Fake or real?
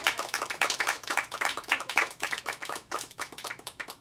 fake